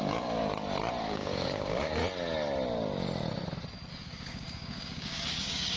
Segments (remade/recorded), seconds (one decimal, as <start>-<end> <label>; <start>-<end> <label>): 0.0-0.4 remade; 0.4-1.0 recorded; 1.0-2.0 remade; 2.0-3.9 recorded; 3.9-5.8 remade